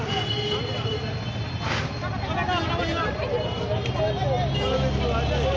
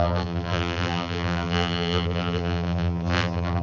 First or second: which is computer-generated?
second